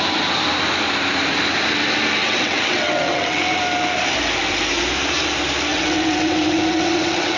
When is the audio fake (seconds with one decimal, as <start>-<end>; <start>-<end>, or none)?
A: 2.2-3.6; 5.7-7.4